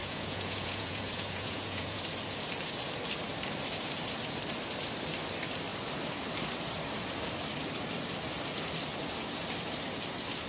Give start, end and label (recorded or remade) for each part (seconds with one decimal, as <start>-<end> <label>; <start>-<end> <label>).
0.0-2.0 remade; 2.0-10.5 recorded